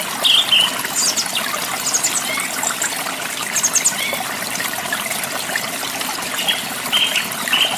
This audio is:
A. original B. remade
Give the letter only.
A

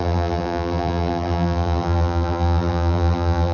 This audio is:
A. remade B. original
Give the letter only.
A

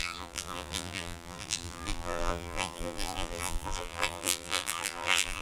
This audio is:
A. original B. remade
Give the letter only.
B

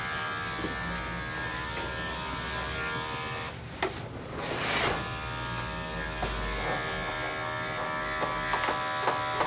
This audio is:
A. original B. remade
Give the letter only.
A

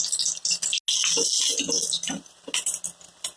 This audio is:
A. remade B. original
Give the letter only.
B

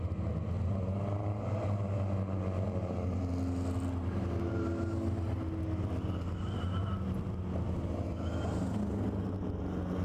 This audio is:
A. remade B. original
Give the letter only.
B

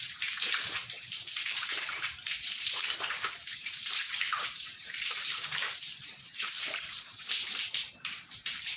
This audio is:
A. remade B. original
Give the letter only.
A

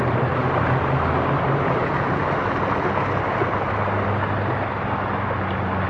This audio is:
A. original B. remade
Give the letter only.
A